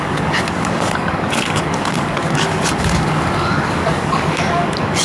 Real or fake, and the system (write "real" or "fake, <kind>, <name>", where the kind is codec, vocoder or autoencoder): fake, codec, DAC